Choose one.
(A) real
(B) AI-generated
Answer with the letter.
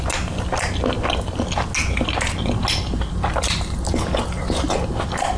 A